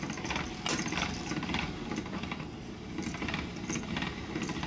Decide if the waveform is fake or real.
real